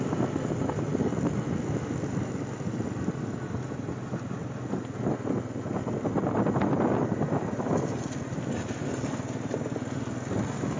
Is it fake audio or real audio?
real